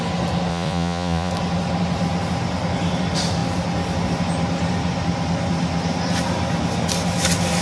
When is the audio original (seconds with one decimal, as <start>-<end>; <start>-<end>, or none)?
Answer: 0.0-0.5; 1.3-7.6